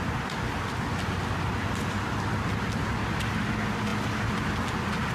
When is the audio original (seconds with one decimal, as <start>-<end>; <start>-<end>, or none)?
0.0-5.1

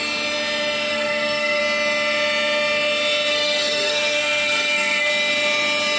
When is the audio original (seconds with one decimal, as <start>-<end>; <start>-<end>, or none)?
0.0-0.9; 1.6-3.3; 5.1-6.0

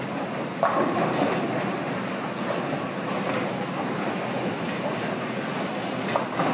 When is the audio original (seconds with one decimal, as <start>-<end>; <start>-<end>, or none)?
0.0-6.5

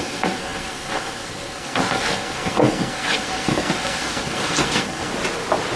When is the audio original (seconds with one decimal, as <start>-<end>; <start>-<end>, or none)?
5.1-5.8